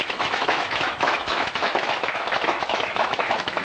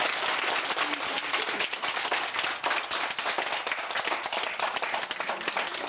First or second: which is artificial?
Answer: first